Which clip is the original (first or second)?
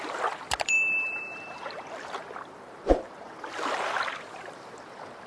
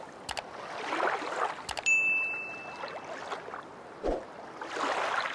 second